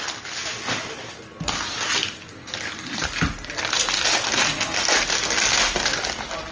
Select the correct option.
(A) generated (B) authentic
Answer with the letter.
B